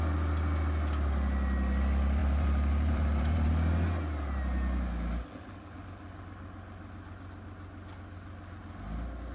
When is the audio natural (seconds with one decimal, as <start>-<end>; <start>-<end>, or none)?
0.0-2.2; 3.5-9.3